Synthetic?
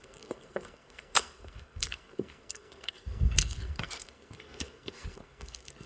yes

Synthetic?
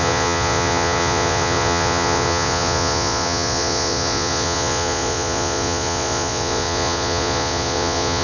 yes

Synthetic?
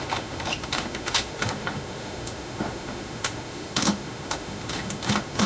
yes